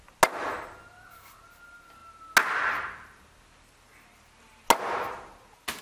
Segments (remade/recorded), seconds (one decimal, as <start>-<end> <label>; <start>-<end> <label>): 0.0-5.8 recorded